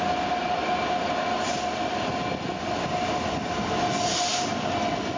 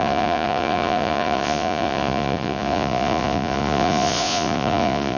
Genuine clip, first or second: first